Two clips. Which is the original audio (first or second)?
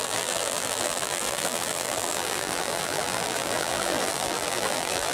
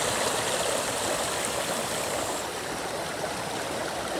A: second